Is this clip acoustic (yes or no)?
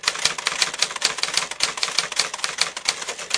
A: yes